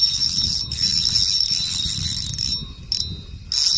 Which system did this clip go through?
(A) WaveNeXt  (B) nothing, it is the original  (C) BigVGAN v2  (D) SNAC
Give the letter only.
B